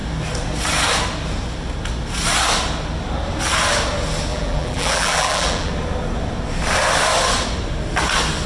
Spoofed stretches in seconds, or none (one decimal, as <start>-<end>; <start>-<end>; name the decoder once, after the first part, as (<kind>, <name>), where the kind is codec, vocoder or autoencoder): 4.3-5.7 (vocoder, BigVGAN v2)